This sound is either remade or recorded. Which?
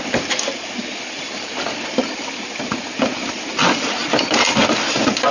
remade